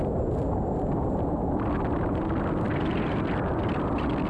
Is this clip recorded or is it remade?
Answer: recorded